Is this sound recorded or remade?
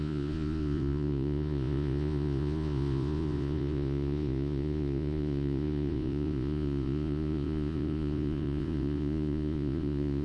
remade